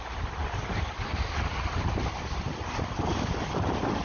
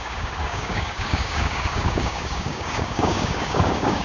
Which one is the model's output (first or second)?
second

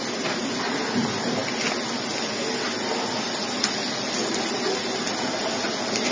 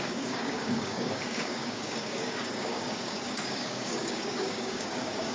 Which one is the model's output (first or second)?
second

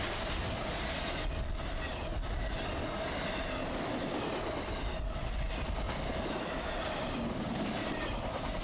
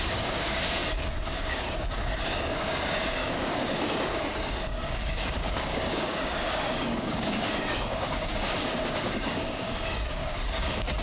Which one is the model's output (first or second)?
second